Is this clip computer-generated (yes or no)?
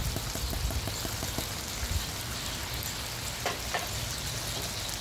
no